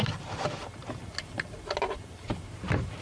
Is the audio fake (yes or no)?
no